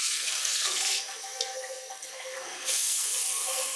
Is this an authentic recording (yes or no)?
no